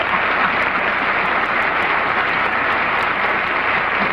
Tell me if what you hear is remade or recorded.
recorded